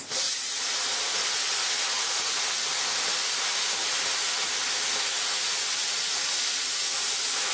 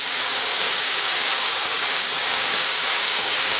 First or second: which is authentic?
first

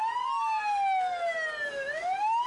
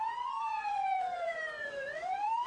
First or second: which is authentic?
first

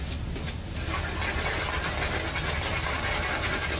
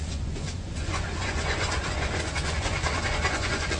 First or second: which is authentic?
first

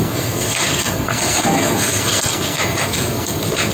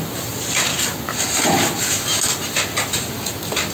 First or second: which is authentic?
second